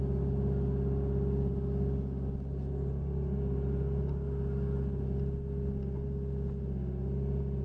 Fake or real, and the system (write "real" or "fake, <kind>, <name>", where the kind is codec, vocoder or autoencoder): real